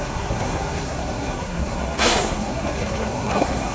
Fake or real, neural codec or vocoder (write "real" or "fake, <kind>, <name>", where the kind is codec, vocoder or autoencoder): fake, codec, SNAC